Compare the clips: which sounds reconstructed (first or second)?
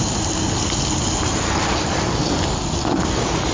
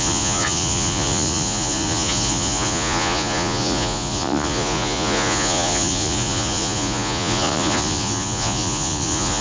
second